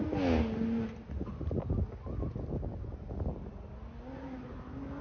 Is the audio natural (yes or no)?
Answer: yes